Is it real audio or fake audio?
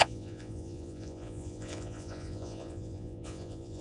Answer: fake